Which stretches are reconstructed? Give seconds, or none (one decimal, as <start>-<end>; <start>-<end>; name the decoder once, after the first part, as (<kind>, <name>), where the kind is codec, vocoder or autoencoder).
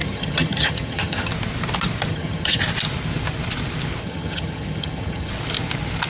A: 0.0-1.3 (vocoder, HiFi-GAN); 2.1-2.6; 4.0-5.3